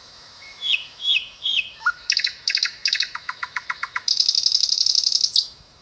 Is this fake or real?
fake